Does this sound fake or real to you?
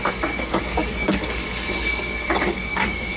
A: fake